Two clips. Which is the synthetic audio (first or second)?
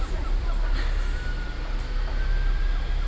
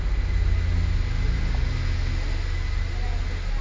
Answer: first